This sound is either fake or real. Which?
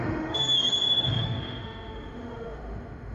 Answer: fake